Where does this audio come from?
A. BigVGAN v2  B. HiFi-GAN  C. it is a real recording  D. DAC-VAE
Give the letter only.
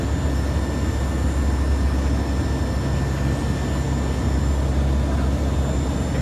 C